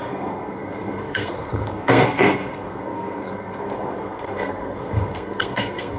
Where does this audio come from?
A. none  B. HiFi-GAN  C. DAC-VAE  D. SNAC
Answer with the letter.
D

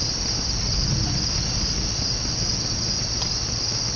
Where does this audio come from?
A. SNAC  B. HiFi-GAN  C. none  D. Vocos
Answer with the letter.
C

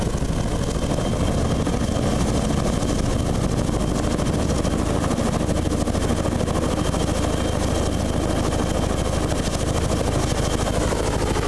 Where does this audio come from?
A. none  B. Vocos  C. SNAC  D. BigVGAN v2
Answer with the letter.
A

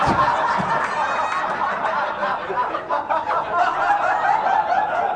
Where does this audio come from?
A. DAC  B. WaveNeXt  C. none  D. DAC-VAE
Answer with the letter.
C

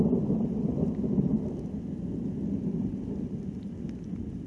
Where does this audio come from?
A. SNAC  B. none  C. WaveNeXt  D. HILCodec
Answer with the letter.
B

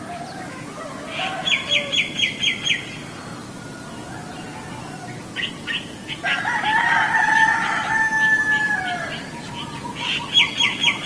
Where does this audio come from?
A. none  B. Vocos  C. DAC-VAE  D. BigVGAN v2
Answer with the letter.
A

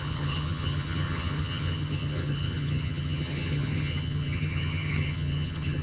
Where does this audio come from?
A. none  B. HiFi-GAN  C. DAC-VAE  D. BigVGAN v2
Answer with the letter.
B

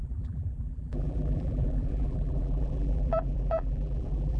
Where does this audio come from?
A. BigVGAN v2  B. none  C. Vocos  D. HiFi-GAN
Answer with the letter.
A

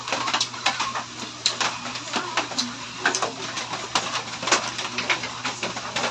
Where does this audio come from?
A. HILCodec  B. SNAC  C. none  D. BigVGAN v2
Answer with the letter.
D